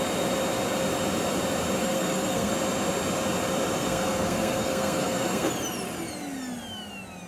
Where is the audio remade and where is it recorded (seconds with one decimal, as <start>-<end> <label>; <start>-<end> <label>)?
0.0-1.8 recorded; 1.8-2.5 remade; 2.5-3.8 recorded; 3.8-5.5 remade; 5.5-7.3 recorded